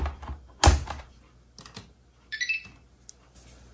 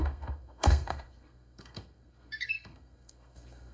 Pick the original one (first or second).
first